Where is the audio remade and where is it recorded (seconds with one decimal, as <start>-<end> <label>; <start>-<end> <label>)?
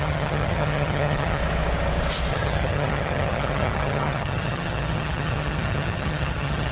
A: 0.0-1.4 remade; 1.4-2.3 recorded; 2.3-6.7 remade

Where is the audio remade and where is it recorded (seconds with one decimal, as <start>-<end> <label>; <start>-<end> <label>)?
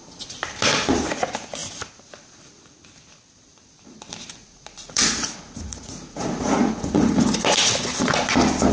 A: 0.0-4.4 recorded; 4.4-7.4 remade; 7.4-8.7 recorded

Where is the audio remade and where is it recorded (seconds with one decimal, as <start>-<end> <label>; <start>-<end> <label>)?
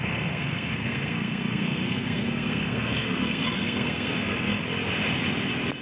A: 0.0-4.6 remade; 4.6-5.8 recorded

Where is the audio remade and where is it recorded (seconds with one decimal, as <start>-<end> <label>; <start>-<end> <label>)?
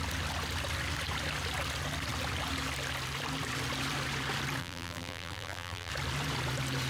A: 0.0-4.6 recorded; 4.6-5.9 remade; 5.9-6.9 recorded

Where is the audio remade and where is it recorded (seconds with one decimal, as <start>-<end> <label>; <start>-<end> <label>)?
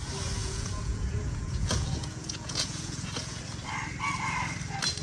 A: 0.0-0.4 recorded; 0.4-3.4 remade; 3.4-5.0 recorded